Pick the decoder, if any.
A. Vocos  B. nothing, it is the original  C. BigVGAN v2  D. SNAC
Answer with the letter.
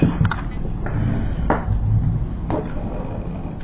B